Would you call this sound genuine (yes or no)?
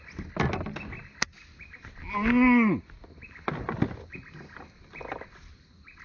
yes